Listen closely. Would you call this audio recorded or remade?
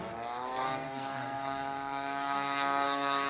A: remade